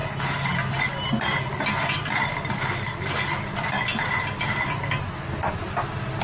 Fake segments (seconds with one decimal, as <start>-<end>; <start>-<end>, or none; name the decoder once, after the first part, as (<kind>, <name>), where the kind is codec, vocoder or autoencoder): none